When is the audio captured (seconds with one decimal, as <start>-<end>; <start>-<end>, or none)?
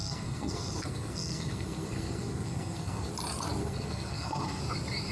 3.1-3.6; 4.6-5.1